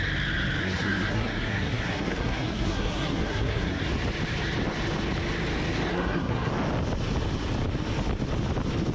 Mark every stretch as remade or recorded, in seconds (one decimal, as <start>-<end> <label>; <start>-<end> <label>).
0.0-0.6 recorded; 0.6-3.8 remade; 3.8-5.9 recorded; 5.9-6.5 remade; 6.5-8.9 recorded